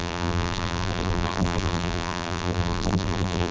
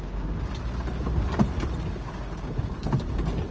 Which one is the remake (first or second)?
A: first